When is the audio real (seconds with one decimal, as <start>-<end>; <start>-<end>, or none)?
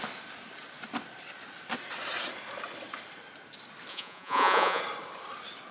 0.0-3.9; 4.8-5.7